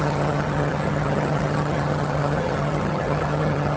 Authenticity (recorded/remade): remade